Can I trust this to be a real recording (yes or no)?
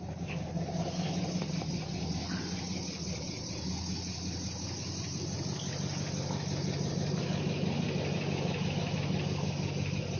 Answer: yes